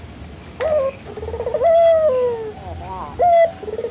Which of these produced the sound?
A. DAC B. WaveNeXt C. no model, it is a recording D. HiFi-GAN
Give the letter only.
C